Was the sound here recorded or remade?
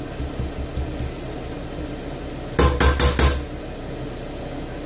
recorded